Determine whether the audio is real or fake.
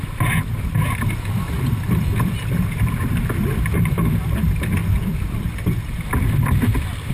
real